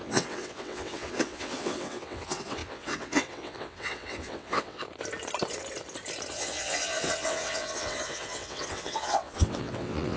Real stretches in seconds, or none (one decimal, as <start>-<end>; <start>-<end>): 4.8-6.3